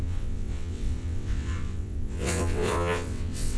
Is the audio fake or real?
fake